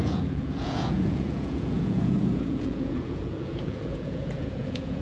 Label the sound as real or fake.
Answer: fake